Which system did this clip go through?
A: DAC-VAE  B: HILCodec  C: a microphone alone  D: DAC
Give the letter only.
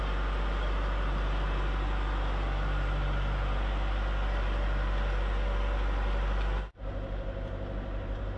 C